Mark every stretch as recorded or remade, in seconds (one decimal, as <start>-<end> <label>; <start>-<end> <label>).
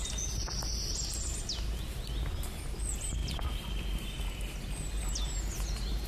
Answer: 0.0-6.1 recorded